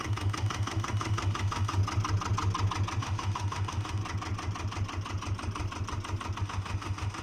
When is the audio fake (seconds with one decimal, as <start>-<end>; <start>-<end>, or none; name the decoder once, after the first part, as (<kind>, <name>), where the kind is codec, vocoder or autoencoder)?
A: 0.0-1.8 (autoencoder, DAC-VAE); 3.0-4.0; 6.4-7.2